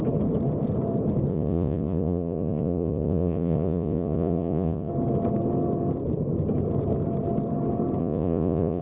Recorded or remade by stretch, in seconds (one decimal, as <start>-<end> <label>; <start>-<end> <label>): 0.0-1.3 recorded; 1.3-4.9 remade; 4.9-8.0 recorded; 8.0-8.8 remade